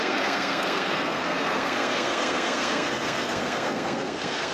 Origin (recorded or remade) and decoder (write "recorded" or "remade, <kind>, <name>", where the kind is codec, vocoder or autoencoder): remade, codec, SNAC